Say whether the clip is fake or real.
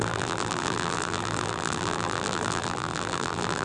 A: fake